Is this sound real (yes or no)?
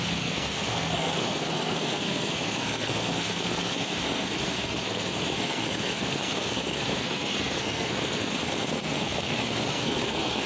no